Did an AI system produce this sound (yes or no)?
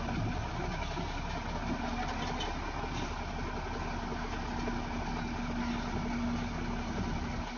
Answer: no